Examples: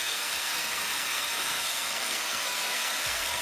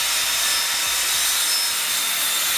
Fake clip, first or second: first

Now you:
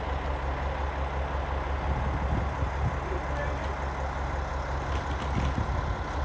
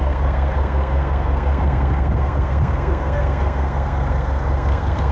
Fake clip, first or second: second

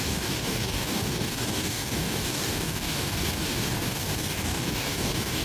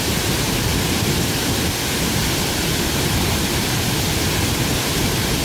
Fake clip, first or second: first